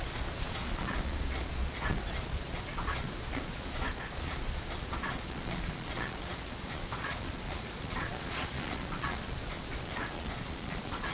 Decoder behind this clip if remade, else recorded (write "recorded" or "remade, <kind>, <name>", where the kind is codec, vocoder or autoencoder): remade, vocoder, Vocos